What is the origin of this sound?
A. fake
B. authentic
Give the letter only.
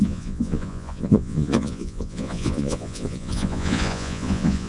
A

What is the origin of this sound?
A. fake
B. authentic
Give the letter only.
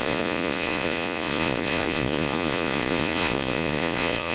A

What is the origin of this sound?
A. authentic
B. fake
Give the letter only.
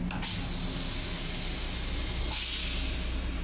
A